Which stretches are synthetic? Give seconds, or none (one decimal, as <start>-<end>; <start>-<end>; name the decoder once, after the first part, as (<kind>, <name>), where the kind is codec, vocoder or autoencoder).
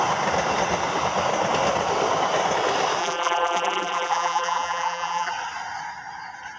3.0-5.3 (vocoder, BigVGAN v2)